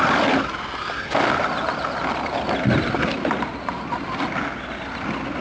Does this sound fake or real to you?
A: real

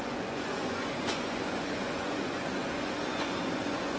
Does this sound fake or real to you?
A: fake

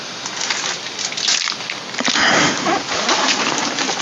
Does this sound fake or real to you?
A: real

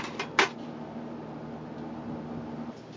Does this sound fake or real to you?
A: real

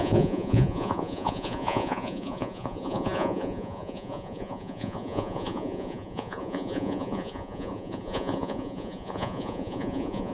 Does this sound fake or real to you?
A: fake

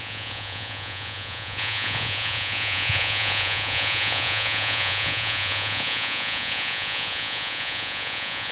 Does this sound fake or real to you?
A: fake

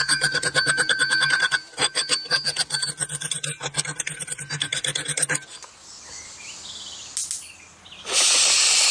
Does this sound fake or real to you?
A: real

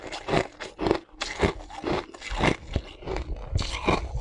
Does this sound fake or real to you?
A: real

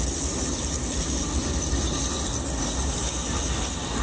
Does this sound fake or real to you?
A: real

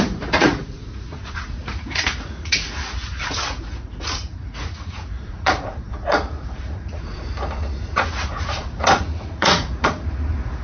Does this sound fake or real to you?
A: fake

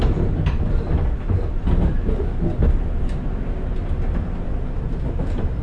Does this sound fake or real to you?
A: real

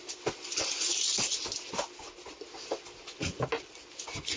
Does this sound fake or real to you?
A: real